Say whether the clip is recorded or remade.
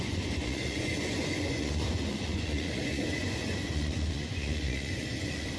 remade